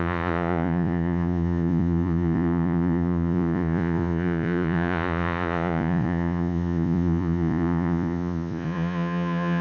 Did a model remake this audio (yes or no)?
yes